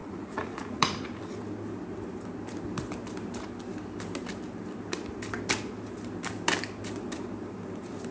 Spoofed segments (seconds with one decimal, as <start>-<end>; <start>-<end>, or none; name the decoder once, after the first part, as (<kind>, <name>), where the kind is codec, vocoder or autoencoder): 0.0-1.2 (vocoder, Vocos)